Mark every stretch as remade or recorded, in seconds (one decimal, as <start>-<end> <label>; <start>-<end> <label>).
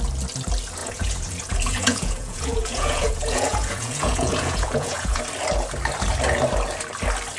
0.0-0.8 recorded; 0.8-5.2 remade; 5.2-7.4 recorded